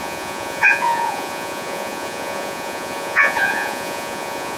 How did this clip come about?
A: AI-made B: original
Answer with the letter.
A